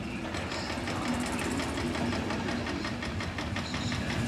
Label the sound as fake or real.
real